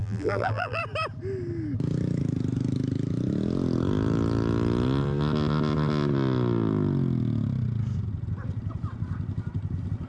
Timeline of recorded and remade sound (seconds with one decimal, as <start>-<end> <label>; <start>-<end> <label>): 0.0-0.8 remade; 0.8-10.1 recorded